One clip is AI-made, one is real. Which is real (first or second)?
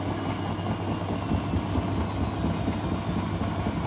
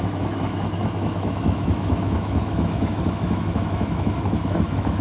first